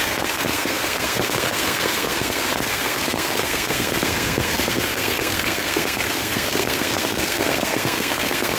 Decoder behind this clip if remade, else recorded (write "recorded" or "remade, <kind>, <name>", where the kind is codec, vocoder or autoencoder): remade, codec, SNAC